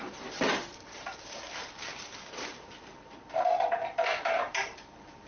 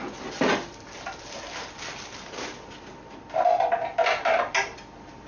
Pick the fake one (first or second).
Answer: first